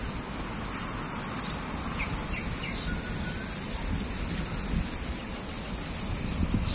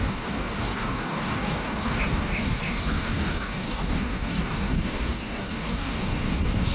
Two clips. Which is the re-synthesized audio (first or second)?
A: second